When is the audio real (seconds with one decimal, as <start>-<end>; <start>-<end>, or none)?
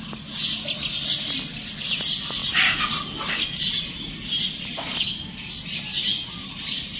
0.0-7.0